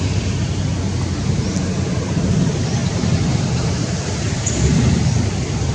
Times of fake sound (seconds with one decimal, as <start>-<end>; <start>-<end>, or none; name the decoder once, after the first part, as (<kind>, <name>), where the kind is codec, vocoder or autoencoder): 0.0-0.7 (vocoder, BigVGAN v2); 1.4-5.7